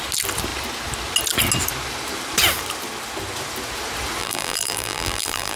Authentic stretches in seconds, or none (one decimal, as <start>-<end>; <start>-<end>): 0.0-4.2